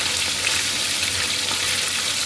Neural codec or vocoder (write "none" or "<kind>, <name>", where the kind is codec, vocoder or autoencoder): none